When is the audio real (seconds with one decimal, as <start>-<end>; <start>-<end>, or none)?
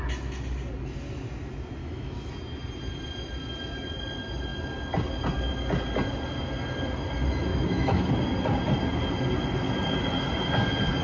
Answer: 0.0-1.8; 2.3-7.5; 8.1-11.0